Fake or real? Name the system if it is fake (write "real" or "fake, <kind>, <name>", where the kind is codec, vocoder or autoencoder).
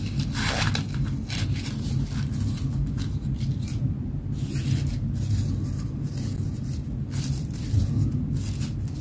real